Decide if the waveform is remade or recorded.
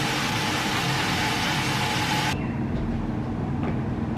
recorded